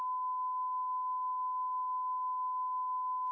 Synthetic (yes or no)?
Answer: no